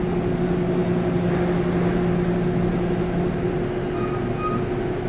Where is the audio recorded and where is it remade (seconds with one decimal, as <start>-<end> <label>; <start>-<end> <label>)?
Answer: 0.0-5.1 recorded